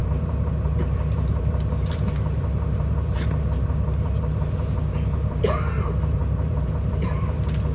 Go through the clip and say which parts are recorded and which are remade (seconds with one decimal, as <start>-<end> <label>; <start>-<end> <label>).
0.0-7.7 remade